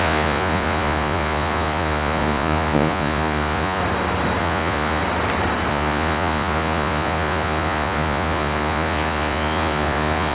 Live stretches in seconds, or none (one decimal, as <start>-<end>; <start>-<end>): 3.8-4.4; 5.0-5.7